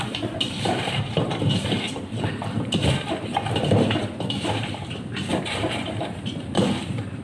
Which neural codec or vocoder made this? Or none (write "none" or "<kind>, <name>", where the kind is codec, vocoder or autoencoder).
vocoder, BigVGAN v2